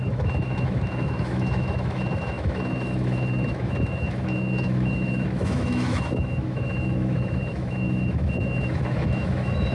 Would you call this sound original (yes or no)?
no